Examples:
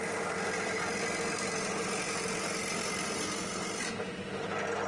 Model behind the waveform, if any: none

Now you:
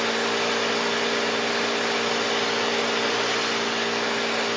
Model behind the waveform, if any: none